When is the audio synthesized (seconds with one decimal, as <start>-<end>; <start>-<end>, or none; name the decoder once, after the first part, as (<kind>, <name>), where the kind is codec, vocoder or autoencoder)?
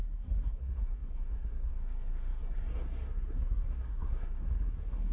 0.0-5.1 (codec, SNAC)